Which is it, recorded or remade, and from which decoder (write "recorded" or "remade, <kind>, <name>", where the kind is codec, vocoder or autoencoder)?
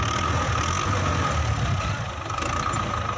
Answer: recorded